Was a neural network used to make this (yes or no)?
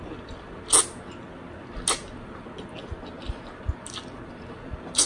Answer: no